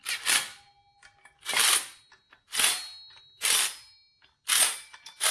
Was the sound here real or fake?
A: real